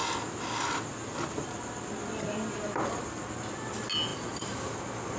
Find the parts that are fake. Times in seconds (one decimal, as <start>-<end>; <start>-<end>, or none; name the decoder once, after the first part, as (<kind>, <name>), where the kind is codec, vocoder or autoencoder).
none